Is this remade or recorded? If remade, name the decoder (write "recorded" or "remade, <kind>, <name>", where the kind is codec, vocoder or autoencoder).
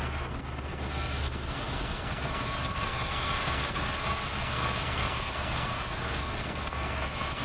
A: remade, codec, SNAC